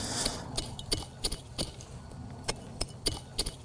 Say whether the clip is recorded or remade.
recorded